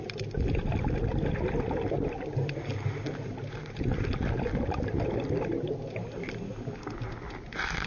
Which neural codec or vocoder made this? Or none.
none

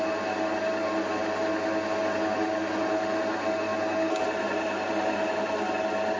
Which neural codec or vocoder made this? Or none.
none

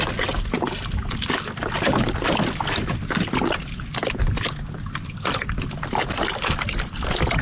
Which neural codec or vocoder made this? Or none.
none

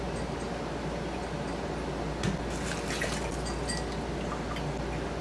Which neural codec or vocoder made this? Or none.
none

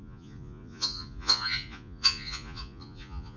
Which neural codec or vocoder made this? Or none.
vocoder, Vocos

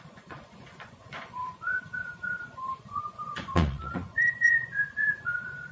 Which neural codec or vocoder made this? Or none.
vocoder, Vocos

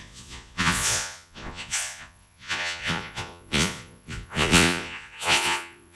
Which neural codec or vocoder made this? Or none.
vocoder, Vocos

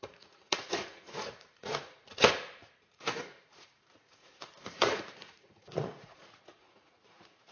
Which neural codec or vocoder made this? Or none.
vocoder, Vocos